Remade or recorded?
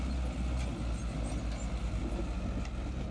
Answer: recorded